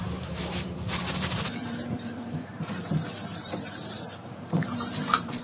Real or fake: fake